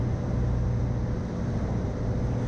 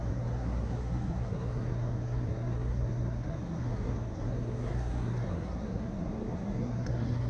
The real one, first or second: first